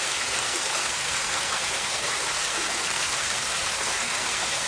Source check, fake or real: fake